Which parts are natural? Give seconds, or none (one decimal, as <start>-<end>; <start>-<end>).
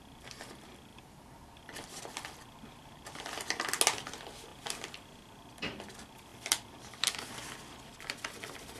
0.0-0.9; 2.0-6.3; 7.2-8.8